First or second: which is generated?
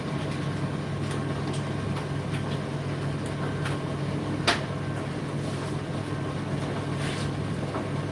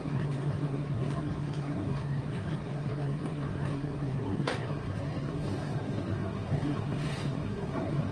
second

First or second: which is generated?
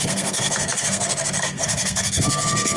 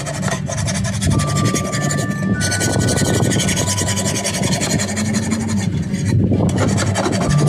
first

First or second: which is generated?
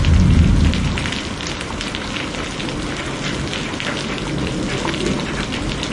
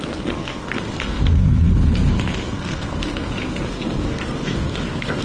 second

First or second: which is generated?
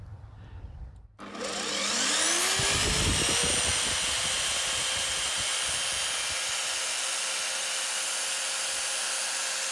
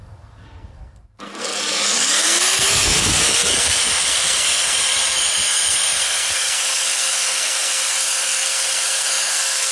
second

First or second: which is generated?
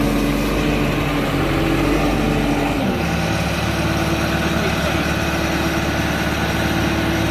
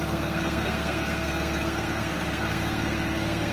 second